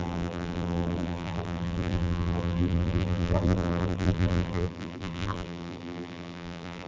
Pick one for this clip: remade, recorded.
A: remade